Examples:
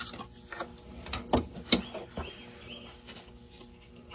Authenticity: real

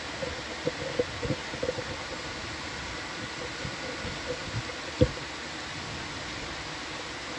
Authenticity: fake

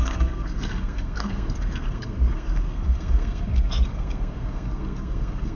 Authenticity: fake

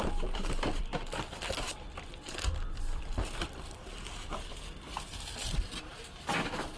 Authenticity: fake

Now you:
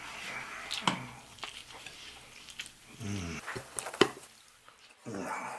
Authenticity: real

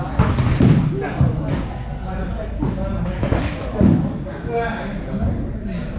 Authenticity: real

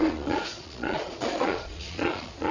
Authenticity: fake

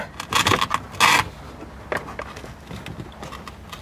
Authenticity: real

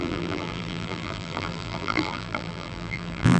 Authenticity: fake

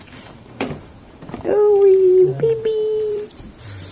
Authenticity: fake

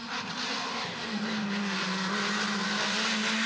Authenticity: real